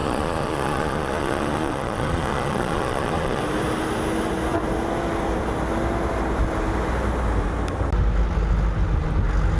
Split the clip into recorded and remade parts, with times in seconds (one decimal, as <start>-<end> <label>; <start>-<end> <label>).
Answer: 0.0-3.4 remade; 3.4-9.6 recorded